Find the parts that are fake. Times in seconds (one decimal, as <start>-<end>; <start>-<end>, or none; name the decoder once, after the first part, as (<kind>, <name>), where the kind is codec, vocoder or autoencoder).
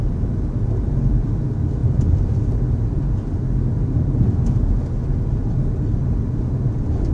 none